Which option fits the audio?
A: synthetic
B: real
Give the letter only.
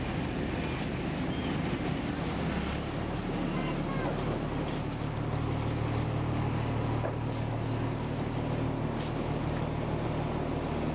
B